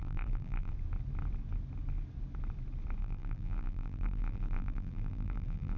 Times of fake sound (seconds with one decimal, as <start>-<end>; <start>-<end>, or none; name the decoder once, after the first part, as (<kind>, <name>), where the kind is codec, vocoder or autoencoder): 0.0-0.7 (vocoder, BigVGAN v2); 3.0-5.8